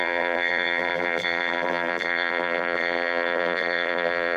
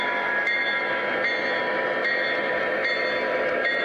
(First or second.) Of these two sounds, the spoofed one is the first